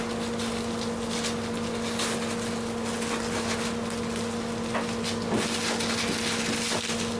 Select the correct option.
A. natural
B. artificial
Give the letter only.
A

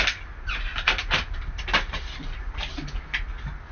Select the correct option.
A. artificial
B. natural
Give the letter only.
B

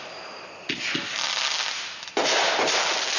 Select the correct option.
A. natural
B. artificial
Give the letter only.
A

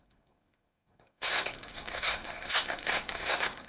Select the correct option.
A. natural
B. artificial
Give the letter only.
B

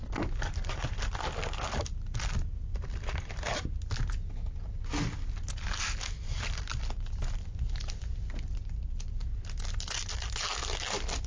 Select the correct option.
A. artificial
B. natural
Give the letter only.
B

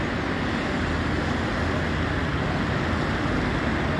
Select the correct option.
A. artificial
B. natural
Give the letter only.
B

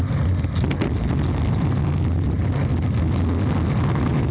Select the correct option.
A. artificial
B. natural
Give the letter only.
B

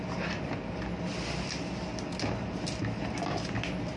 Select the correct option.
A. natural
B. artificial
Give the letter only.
A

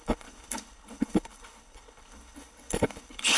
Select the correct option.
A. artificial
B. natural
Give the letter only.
A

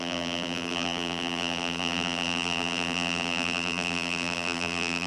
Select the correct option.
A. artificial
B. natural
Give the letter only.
A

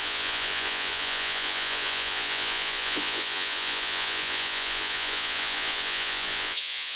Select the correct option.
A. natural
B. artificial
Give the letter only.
B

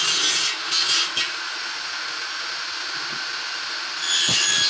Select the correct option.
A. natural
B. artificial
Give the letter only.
A